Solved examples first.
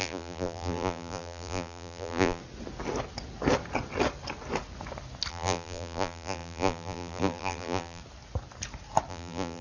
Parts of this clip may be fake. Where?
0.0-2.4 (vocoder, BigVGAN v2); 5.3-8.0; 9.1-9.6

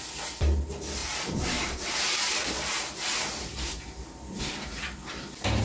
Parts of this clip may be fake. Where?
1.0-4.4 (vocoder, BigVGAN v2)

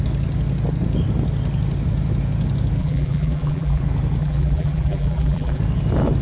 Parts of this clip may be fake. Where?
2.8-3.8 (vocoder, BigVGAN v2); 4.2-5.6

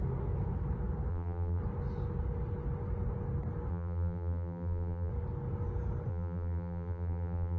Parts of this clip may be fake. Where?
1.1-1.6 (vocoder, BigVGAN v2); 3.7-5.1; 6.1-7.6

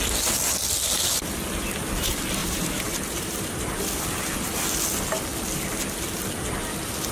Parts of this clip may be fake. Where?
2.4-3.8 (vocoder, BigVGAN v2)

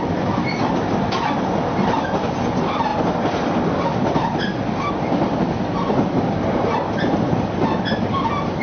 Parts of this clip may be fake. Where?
0.0-8.6 (vocoder, BigVGAN v2)